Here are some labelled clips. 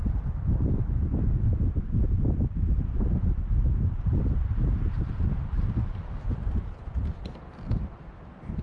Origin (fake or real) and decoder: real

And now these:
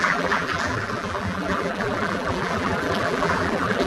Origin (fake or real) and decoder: fake, vocoder, BigVGAN v2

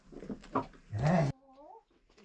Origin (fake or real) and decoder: real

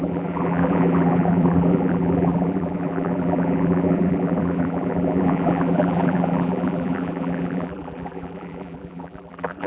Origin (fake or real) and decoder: fake, vocoder, BigVGAN v2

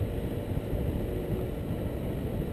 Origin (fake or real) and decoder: real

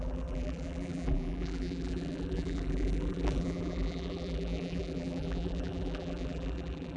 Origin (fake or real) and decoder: fake, vocoder, BigVGAN v2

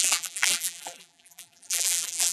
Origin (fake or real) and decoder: fake, vocoder, BigVGAN v2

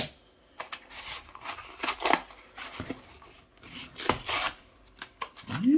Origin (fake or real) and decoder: real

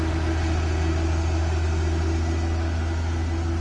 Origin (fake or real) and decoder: real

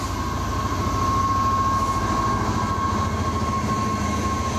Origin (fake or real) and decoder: real